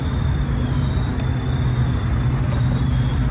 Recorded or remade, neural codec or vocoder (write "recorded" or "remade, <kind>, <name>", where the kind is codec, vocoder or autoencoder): recorded